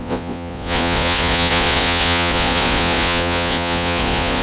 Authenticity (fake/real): fake